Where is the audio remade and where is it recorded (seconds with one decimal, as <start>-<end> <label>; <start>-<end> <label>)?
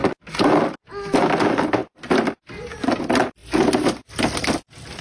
0.0-5.0 recorded